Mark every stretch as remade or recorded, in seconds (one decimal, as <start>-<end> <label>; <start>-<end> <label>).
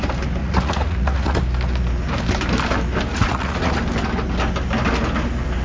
0.0-0.4 recorded; 0.4-1.4 remade; 1.4-3.1 recorded; 3.1-3.8 remade; 3.8-5.6 recorded